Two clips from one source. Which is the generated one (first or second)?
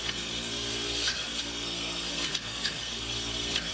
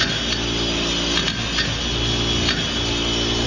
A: first